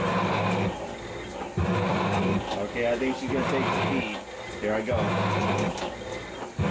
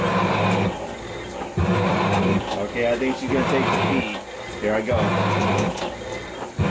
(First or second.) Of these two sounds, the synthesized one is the first